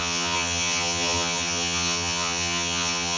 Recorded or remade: remade